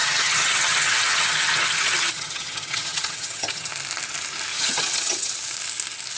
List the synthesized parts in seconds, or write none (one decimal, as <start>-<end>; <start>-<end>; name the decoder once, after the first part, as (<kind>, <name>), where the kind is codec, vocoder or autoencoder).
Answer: 0.0-3.7 (vocoder, HiFi-GAN); 4.5-5.3